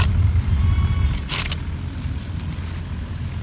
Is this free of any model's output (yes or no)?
yes